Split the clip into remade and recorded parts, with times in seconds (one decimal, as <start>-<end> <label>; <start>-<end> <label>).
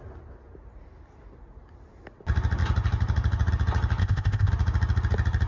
0.0-4.0 recorded; 4.0-4.5 remade; 4.5-5.5 recorded